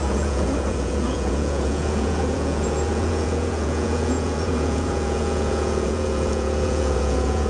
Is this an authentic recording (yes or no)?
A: no